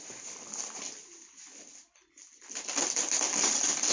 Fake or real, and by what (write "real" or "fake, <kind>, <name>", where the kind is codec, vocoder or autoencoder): real